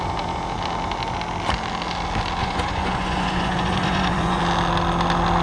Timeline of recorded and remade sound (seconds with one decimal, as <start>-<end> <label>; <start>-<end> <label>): 0.0-2.4 recorded; 2.4-4.4 remade; 4.4-5.4 recorded